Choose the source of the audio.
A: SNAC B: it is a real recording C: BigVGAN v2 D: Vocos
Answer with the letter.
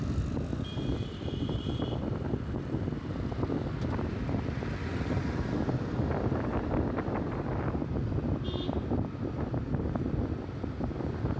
B